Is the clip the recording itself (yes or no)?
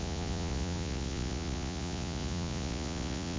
no